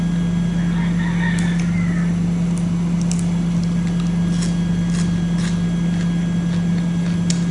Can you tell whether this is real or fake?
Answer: real